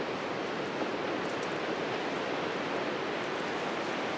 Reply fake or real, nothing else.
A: real